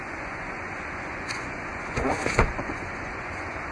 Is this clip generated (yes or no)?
yes